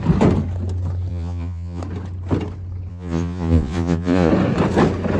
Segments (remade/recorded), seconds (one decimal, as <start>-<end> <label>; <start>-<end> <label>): 0.0-1.1 recorded; 1.1-1.8 remade; 1.8-2.9 recorded; 2.9-4.3 remade; 4.3-5.2 recorded